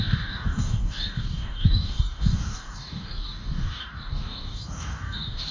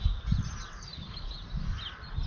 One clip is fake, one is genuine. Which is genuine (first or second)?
second